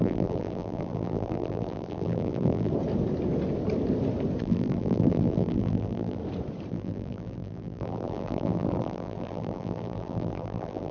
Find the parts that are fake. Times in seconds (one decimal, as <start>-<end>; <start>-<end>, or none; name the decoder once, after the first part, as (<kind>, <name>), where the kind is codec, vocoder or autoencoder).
0.0-2.7 (vocoder, BigVGAN v2); 4.4-6.2; 6.7-10.9